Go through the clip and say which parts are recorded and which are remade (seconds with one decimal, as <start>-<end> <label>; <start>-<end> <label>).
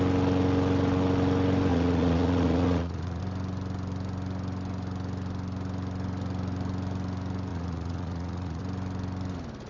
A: 0.0-1.7 recorded; 1.7-3.2 remade; 3.2-7.5 recorded; 7.5-8.6 remade; 8.6-9.7 recorded